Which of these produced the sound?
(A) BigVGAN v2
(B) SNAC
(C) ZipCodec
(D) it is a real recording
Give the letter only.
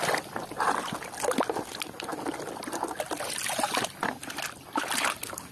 D